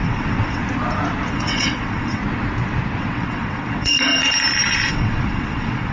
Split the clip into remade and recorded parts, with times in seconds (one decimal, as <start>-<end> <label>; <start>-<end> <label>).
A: 0.0-0.6 remade; 0.6-1.3 recorded; 1.3-2.2 remade; 2.2-3.0 recorded; 3.0-4.1 remade; 4.1-4.9 recorded; 4.9-5.9 remade